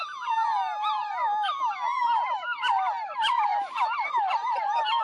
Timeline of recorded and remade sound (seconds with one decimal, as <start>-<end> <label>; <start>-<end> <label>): 0.0-1.0 remade; 1.0-2.0 recorded; 2.0-5.0 remade